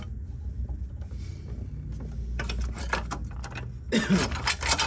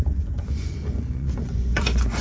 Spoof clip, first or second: second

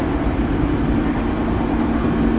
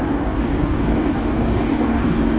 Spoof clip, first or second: second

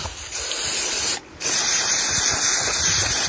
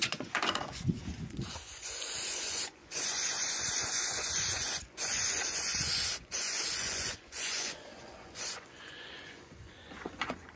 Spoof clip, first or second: second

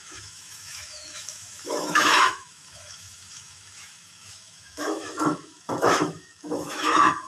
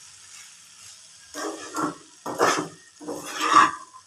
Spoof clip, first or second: first